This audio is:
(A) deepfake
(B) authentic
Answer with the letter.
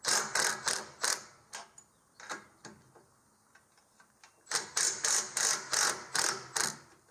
B